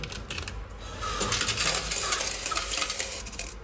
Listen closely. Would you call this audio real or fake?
real